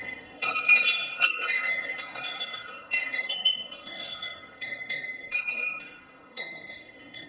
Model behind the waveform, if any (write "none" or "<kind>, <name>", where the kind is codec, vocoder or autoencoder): codec, SNAC